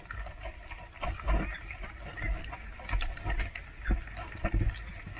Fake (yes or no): no